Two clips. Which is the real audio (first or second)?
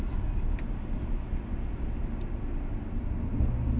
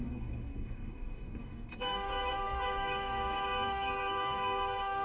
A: first